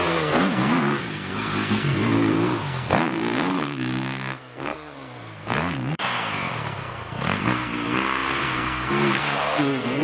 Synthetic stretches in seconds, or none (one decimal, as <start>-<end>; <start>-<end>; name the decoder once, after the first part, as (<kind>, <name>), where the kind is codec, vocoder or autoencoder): 0.0-10.0 (codec, SNAC)